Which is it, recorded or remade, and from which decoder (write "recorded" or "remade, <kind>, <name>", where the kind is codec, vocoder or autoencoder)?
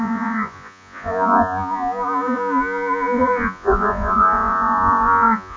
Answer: remade, vocoder, Vocos